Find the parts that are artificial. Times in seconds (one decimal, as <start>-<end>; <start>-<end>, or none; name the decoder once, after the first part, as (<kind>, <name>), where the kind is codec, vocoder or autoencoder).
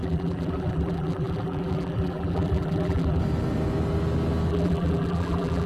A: 0.0-3.2 (vocoder, BigVGAN v2); 4.5-5.7